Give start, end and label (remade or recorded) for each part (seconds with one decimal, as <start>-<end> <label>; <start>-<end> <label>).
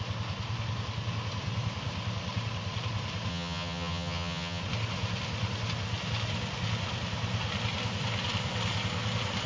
0.0-3.3 recorded; 3.3-4.6 remade; 4.6-9.5 recorded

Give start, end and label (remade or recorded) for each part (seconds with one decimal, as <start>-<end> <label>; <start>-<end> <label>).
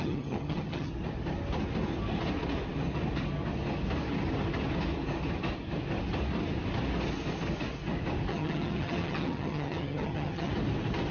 0.0-0.9 remade; 0.9-8.3 recorded; 8.3-10.5 remade; 10.5-11.1 recorded